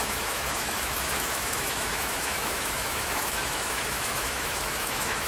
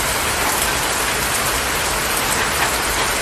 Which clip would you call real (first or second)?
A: second